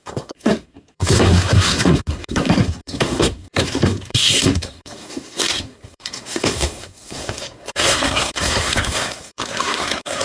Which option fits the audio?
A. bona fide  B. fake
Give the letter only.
B